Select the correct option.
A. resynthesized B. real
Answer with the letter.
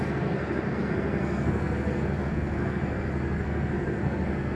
A